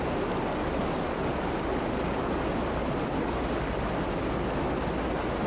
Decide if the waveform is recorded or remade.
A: recorded